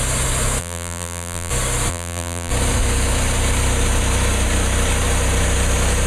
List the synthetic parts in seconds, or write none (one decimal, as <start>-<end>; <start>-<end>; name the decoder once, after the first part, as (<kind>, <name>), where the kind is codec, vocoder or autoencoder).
0.6-1.5 (vocoder, BigVGAN v2); 1.9-2.5